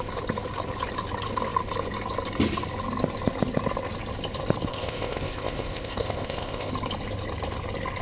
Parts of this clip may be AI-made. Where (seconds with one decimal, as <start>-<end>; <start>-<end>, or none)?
4.7-6.7